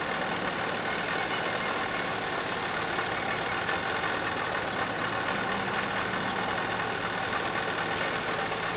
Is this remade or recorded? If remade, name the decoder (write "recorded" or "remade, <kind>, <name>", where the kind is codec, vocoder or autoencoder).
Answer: recorded